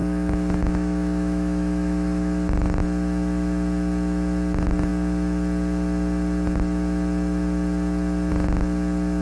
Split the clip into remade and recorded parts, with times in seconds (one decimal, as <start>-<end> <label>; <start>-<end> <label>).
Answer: 0.0-2.8 remade; 2.8-9.2 recorded